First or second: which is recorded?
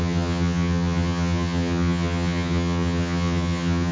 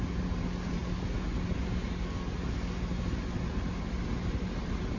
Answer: second